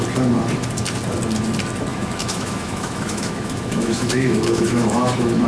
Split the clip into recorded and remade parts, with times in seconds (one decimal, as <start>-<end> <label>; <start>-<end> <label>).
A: 0.0-1.9 recorded; 1.9-5.5 remade